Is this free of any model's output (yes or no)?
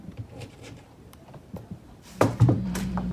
no